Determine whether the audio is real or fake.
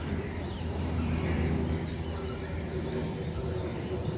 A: fake